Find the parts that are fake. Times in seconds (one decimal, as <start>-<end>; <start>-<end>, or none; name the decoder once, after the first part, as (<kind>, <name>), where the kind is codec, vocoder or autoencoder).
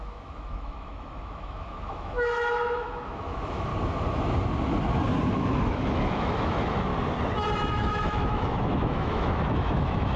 0.0-3.7 (autoencoder, DAC-VAE); 5.3-6.9; 7.7-10.2